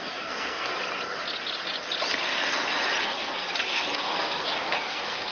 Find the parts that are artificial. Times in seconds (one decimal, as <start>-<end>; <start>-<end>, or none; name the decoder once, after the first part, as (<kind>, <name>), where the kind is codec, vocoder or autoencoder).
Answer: 0.0-0.7 (codec, SNAC); 3.0-5.3